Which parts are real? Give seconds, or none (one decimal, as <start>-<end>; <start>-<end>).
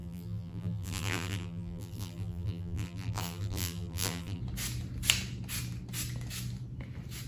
4.4-7.3